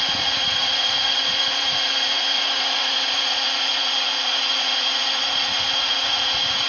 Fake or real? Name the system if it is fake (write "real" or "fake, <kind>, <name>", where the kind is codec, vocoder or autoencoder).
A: fake, vocoder, Vocos